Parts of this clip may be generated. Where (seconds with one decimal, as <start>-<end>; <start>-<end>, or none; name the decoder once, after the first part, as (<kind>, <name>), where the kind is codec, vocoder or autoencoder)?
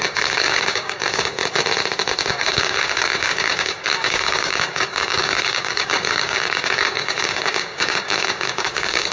0.0-1.4 (codec, DAC); 2.3-9.1